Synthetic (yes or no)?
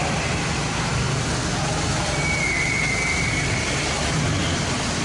no